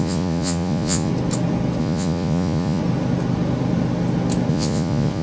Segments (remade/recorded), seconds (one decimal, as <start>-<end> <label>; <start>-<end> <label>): 0.0-1.1 remade; 1.1-1.8 recorded; 1.8-2.8 remade; 2.8-4.5 recorded; 4.5-5.2 remade